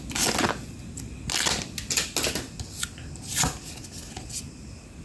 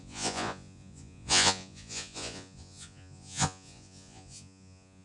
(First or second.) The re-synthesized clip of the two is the second